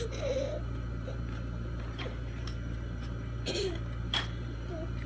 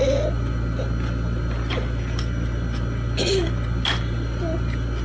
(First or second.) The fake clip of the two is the first